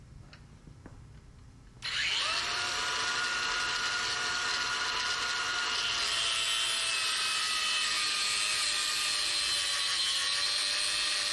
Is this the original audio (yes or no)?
yes